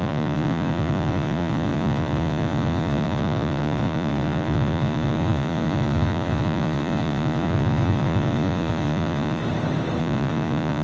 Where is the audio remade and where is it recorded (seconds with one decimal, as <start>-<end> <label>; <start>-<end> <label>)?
0.0-9.4 remade; 9.4-10.0 recorded; 10.0-10.8 remade